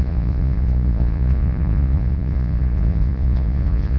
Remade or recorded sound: remade